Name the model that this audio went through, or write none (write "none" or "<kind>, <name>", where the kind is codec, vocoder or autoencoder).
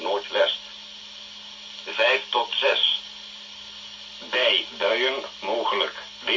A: none